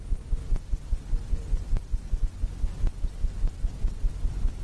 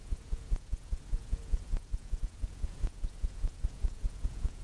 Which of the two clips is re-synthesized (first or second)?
second